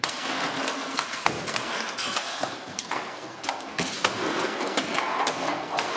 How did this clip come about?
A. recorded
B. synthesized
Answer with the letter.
B